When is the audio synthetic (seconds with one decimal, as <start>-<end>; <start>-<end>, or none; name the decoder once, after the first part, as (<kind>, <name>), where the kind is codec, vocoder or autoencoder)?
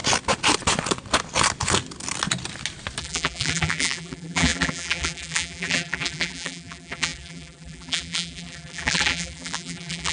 3.0-10.1 (vocoder, BigVGAN v2)